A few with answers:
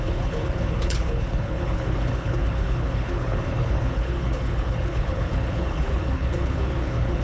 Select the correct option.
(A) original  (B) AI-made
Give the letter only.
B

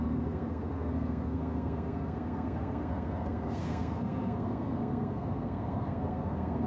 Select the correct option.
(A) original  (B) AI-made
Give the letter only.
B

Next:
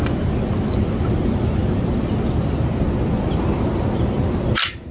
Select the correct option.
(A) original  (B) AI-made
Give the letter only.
A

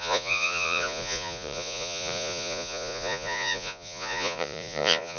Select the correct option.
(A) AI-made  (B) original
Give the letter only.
A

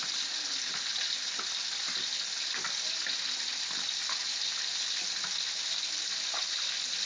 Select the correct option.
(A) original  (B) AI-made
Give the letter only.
A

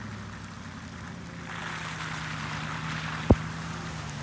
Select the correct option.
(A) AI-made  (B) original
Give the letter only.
B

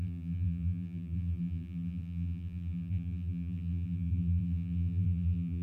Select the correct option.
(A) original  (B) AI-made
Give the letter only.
B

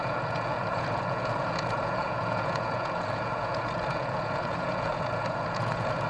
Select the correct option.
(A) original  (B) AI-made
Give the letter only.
B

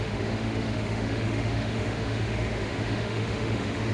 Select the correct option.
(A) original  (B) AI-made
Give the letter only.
B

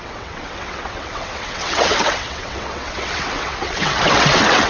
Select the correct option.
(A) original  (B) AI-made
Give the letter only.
B